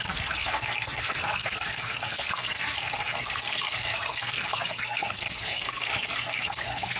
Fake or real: fake